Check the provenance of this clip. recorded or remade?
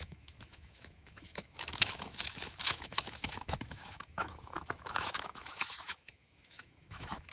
remade